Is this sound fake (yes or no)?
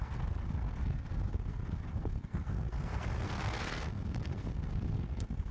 yes